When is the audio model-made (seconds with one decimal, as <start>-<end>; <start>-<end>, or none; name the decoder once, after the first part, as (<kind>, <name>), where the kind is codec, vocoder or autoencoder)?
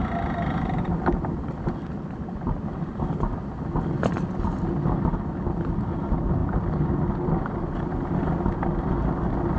none